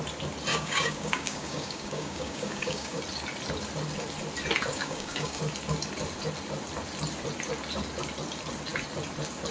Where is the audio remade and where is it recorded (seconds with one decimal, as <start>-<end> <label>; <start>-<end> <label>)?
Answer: 0.0-0.5 recorded; 0.5-3.0 remade; 3.0-4.7 recorded; 4.7-5.4 remade; 5.4-9.5 recorded